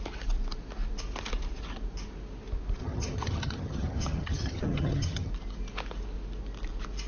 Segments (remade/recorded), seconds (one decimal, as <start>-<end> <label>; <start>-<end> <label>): 0.0-2.8 recorded; 2.8-5.3 remade; 5.3-7.1 recorded